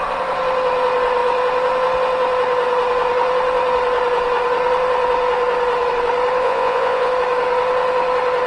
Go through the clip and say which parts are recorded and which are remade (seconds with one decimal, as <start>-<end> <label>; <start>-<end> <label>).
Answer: 0.0-6.4 recorded; 6.4-7.1 remade; 7.1-8.5 recorded